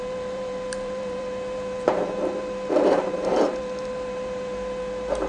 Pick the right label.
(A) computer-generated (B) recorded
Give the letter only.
A